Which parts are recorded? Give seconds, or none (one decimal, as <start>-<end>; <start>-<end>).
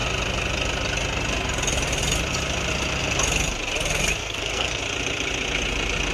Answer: 0.0-4.2; 4.8-6.1